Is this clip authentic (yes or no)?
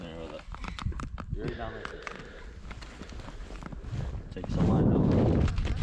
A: no